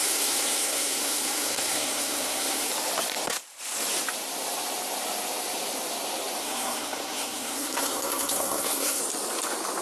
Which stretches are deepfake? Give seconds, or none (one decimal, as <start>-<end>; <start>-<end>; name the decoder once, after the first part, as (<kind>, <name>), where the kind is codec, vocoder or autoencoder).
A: 0.0-2.7 (codec, SNAC); 6.4-9.0